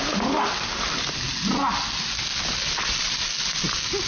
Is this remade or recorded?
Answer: recorded